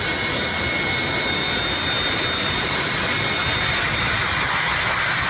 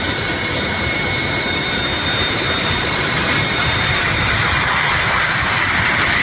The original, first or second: first